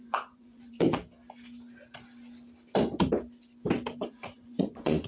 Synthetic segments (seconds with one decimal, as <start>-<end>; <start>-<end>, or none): 0.0-1.0; 4.1-5.1